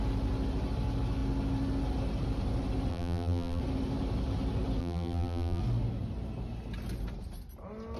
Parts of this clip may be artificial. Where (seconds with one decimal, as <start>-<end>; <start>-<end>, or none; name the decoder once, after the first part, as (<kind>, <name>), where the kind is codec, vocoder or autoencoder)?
2.9-3.6 (vocoder, BigVGAN v2); 4.8-5.6